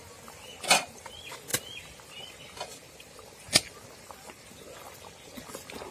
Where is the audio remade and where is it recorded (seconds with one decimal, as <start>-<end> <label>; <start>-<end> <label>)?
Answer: 0.0-5.9 recorded